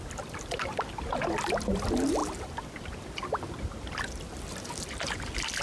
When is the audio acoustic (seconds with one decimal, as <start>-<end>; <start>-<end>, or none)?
0.0-5.6